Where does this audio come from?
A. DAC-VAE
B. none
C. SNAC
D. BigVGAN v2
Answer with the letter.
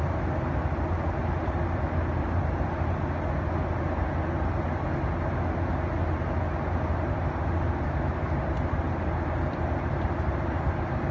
B